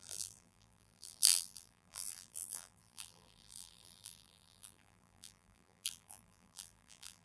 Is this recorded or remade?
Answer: remade